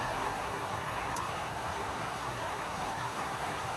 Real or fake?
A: fake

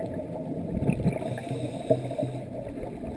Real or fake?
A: real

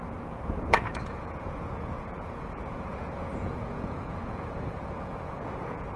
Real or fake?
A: fake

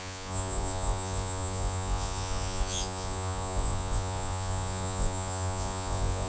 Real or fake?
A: fake